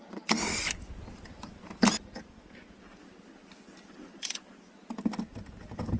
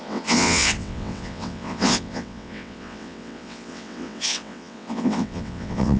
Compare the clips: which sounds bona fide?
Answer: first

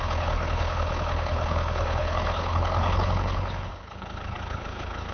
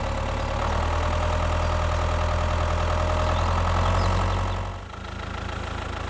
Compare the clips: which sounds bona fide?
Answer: second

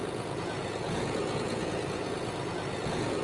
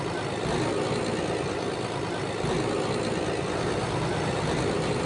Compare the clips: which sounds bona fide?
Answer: second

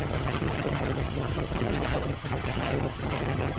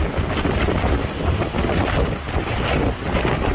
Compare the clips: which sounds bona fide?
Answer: second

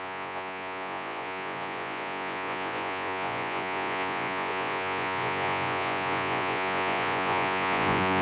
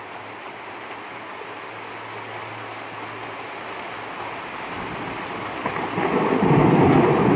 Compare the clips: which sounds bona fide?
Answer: second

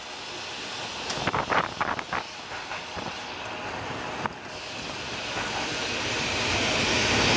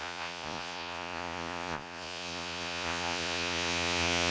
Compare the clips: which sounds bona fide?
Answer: first